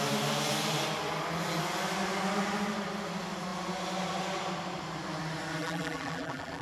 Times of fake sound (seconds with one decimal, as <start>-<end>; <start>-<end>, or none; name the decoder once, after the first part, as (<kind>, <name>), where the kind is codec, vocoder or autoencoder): 5.6-6.6 (vocoder, BigVGAN v2)